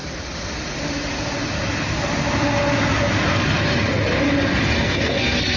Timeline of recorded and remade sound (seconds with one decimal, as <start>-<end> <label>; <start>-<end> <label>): 0.0-4.8 recorded; 4.8-5.6 remade